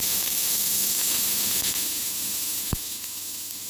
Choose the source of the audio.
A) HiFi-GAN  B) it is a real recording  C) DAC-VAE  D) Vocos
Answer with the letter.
C